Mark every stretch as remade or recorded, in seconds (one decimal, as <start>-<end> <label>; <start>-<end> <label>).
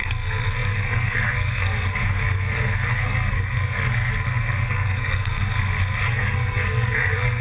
0.0-7.4 remade